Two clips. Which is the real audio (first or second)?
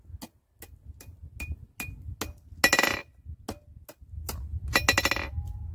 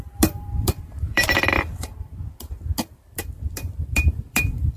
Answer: first